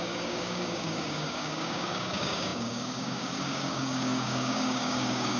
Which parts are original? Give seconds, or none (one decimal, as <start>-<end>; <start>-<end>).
none